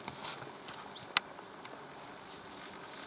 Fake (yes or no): no